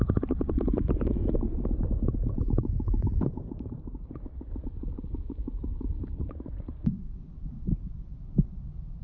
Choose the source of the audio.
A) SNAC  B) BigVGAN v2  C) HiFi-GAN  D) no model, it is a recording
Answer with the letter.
B